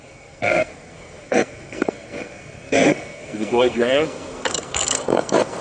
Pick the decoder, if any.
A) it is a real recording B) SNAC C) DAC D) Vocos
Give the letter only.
B